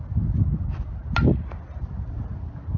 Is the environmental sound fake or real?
real